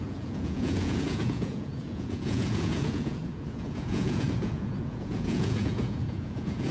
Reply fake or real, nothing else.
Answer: fake